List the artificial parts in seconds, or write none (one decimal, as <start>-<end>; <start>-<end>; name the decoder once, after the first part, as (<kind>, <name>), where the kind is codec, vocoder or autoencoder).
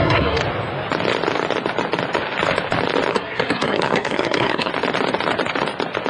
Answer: 0.0-0.4 (codec, SNAC); 3.1-4.7